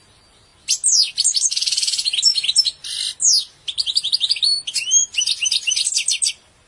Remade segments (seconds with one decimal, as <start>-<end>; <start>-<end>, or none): none